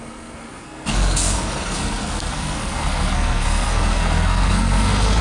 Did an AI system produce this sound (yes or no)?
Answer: yes